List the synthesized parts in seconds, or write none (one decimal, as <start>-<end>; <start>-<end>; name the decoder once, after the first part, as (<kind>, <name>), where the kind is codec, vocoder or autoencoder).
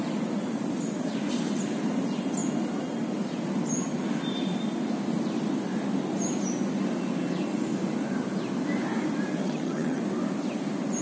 9.4-10.0 (vocoder, HiFi-GAN)